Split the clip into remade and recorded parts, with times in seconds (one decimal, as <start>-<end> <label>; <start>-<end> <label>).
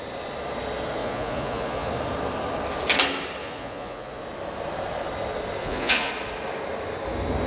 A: 0.0-1.0 recorded; 1.0-1.9 remade; 1.9-3.4 recorded; 3.4-4.2 remade; 4.2-5.6 recorded; 5.6-6.1 remade; 6.1-7.5 recorded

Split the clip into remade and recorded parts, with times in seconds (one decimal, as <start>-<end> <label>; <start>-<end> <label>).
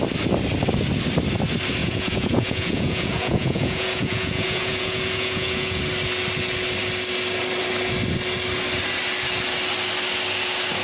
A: 0.0-1.8 recorded; 1.8-5.8 remade; 5.8-10.8 recorded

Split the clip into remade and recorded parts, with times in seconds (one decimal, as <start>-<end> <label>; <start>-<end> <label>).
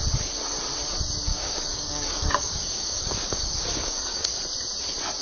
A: 0.0-1.3 recorded; 1.3-4.4 remade; 4.4-5.2 recorded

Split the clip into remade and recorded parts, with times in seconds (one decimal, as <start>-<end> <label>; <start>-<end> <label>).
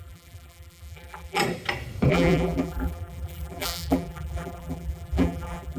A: 0.0-1.4 remade; 1.4-2.1 recorded; 2.1-5.8 remade